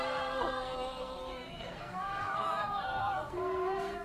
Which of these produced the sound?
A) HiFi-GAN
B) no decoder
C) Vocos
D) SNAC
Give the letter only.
D